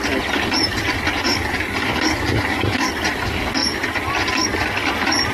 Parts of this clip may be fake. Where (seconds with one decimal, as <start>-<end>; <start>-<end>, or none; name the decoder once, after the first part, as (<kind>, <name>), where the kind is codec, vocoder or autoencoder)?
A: 1.3-2.9 (codec, DAC)